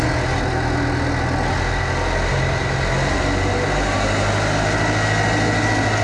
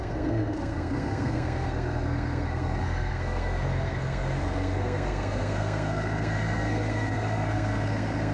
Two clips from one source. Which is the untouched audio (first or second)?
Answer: first